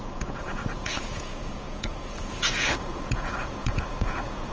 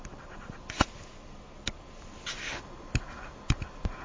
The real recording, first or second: second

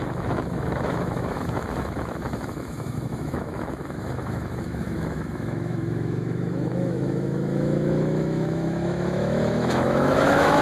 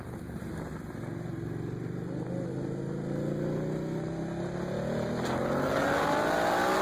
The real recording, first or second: second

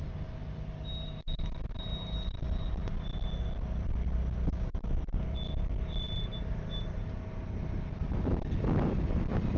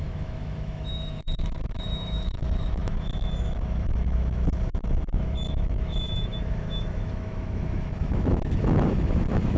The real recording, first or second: first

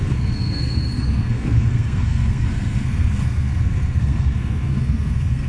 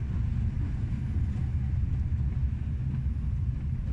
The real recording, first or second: second